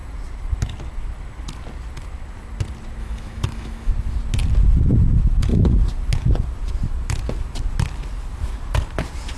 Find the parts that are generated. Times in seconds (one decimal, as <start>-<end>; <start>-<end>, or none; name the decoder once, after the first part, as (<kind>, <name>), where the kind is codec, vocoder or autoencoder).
3.0-3.9 (autoencoder, DAC-VAE)